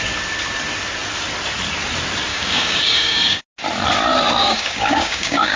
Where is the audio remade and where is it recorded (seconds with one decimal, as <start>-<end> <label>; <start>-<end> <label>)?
0.0-2.3 recorded; 2.3-3.4 remade; 3.4-4.4 recorded; 4.4-5.6 remade